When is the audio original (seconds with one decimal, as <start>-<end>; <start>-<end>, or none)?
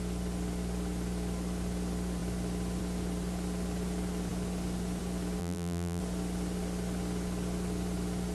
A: 0.0-5.4; 6.0-8.3